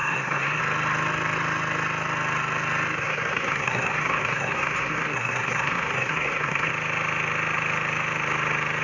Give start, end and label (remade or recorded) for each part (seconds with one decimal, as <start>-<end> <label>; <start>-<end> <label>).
0.0-0.6 remade; 0.6-3.0 recorded; 3.0-6.7 remade; 6.7-8.8 recorded